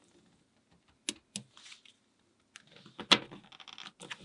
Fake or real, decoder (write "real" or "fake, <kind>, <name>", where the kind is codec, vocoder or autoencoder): real